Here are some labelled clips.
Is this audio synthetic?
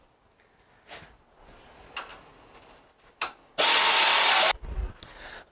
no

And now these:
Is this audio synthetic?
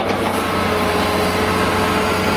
no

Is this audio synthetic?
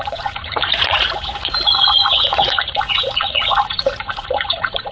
yes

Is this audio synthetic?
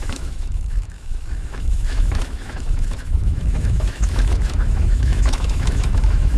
yes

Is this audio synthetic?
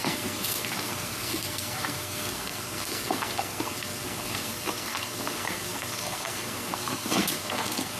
yes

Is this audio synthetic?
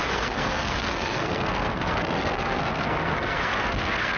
yes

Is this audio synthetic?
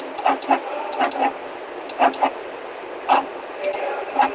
no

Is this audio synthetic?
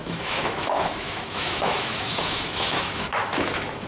yes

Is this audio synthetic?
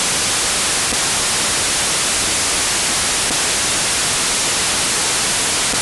no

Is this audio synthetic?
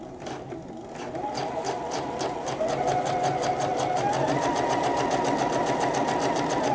no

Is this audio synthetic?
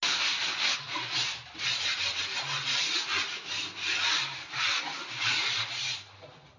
no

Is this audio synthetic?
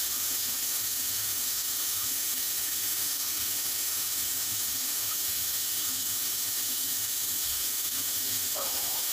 yes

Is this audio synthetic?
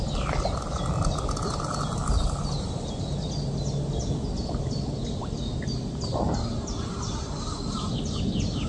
no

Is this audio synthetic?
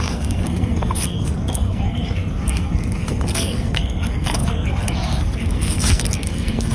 yes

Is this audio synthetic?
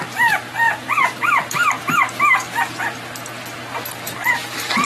no